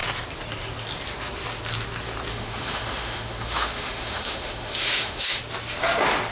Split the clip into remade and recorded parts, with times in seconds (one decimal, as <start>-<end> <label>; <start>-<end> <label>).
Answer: 0.0-2.3 recorded; 2.3-5.4 remade; 5.4-6.3 recorded